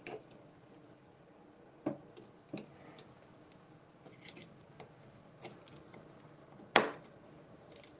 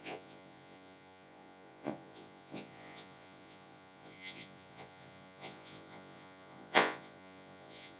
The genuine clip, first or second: first